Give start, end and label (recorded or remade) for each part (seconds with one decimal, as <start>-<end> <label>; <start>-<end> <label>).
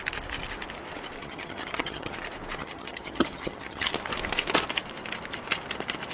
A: 0.0-1.2 recorded; 1.2-2.2 remade; 2.2-2.6 recorded; 2.6-3.9 remade; 3.9-6.1 recorded